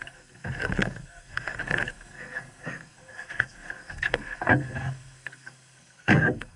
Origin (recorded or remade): remade